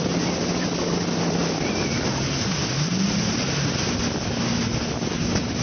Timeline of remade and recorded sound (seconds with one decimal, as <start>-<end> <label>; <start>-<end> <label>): 0.0-5.6 recorded